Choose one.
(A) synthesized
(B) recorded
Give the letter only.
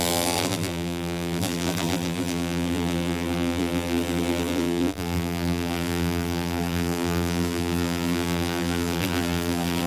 A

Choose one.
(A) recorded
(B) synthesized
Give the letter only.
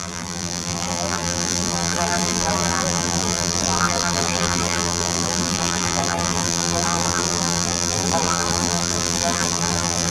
B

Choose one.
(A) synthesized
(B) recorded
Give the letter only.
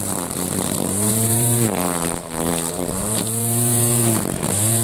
A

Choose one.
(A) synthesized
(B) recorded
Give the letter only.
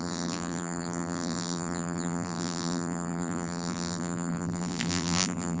A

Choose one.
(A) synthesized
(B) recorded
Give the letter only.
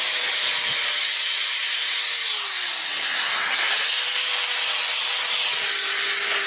B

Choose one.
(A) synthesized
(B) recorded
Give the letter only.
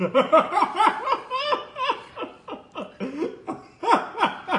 A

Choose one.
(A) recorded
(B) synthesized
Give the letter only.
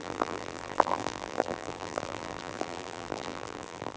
B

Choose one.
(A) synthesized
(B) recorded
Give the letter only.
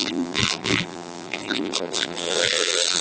A